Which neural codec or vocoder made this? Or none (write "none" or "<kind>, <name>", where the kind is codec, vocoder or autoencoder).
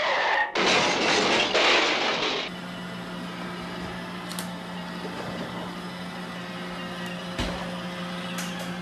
none